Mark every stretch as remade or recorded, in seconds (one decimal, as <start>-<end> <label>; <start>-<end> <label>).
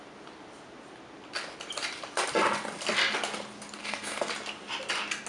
0.0-3.8 recorded; 3.8-4.3 remade; 4.3-5.3 recorded